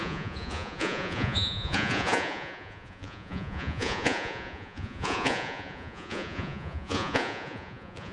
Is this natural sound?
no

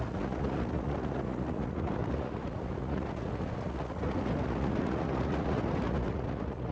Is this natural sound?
no